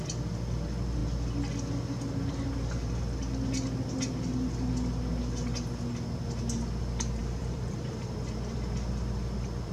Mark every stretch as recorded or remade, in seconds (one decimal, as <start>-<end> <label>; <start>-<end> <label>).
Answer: 0.0-7.2 recorded; 7.2-9.7 remade